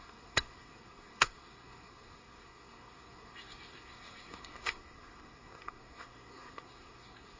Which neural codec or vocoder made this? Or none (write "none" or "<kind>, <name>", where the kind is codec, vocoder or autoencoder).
codec, SNAC